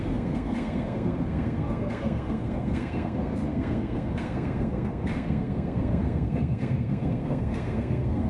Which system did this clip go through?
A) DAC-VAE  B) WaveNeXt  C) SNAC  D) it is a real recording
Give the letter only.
C